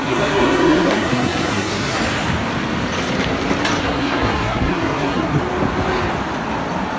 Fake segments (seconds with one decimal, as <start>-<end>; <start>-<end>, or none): 0.0-2.0; 3.8-5.4